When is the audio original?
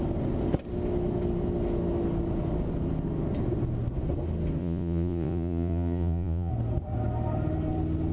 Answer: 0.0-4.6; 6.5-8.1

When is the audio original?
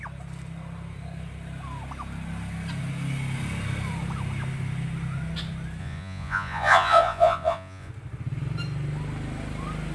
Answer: 0.0-5.8; 7.9-9.9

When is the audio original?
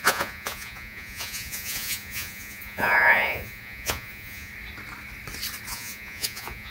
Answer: 4.5-5.7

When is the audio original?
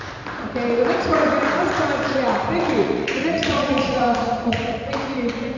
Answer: 0.0-2.8; 4.9-5.6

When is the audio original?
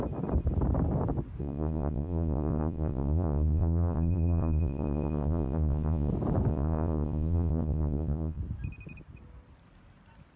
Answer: 0.0-1.4; 6.1-6.5; 8.4-10.4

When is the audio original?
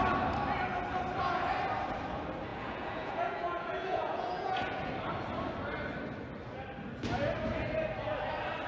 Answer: 0.0-2.5; 4.9-8.7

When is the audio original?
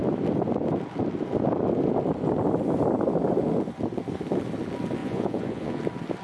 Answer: 0.0-5.0; 5.8-6.2